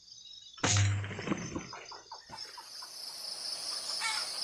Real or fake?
real